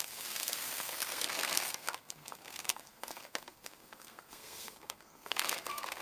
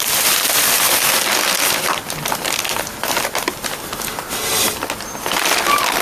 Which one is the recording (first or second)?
second